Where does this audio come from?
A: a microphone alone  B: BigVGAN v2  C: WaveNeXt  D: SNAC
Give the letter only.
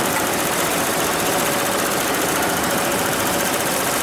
B